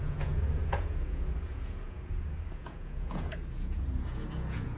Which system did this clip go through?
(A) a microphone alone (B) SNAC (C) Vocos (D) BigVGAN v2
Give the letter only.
C